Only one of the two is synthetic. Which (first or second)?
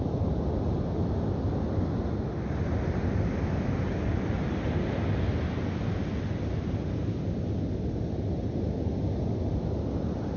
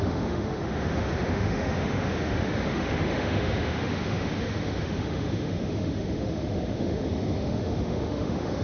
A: second